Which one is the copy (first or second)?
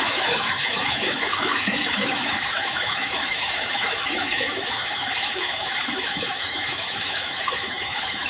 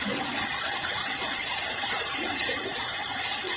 first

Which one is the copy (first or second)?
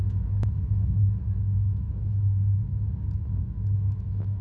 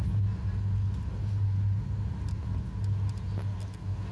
first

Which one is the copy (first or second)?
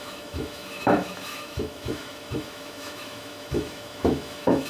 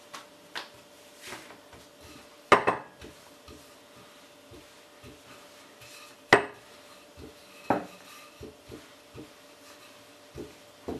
first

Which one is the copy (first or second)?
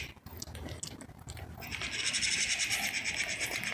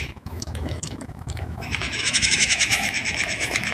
second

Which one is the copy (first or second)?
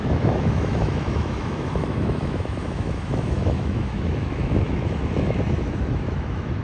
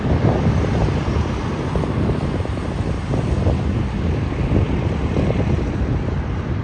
first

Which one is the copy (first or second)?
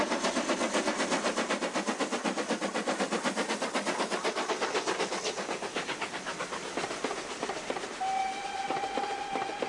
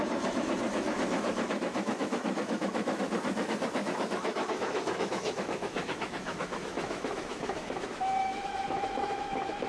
second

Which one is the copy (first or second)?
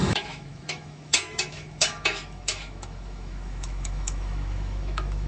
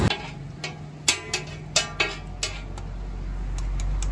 first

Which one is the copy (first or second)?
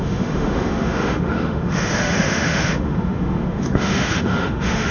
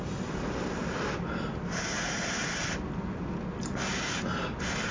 first